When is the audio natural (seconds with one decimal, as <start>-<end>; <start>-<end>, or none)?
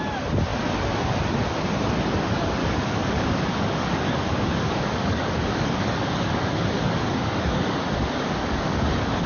0.0-2.6; 7.8-8.4